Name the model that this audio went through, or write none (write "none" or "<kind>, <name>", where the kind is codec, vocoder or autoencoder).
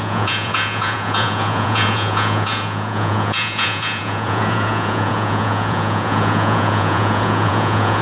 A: vocoder, Vocos